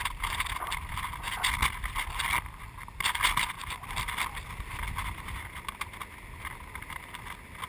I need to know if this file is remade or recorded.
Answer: recorded